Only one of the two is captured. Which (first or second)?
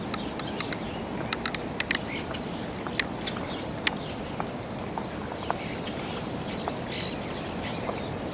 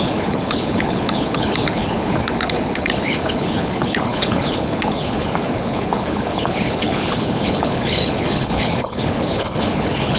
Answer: first